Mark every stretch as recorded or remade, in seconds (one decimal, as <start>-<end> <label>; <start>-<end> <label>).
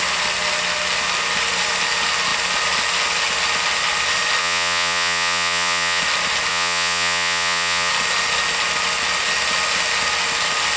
0.0-4.4 recorded; 4.4-6.0 remade; 6.0-6.5 recorded; 6.5-7.9 remade; 7.9-10.8 recorded